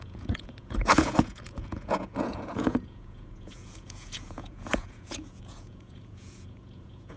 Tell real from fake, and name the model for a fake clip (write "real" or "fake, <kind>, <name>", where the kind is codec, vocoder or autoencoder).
fake, vocoder, Vocos